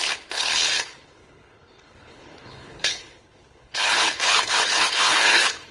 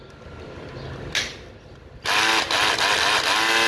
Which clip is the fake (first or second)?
first